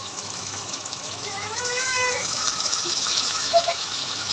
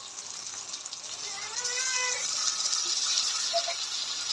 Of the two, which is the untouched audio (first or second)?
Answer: second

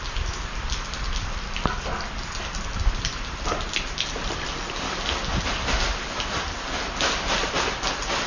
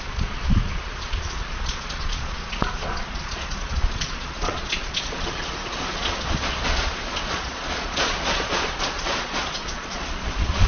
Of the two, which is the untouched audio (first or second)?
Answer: first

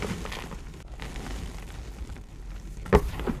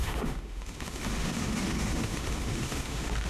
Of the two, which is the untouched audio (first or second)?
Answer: first